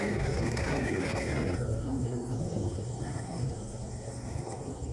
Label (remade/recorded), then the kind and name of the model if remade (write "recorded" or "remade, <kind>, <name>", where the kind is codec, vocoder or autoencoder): remade, codec, SNAC